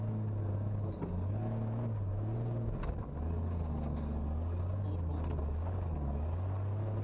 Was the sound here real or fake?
real